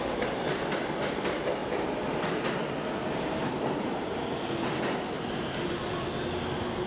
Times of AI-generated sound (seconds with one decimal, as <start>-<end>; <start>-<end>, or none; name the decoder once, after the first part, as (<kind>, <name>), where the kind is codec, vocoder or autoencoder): none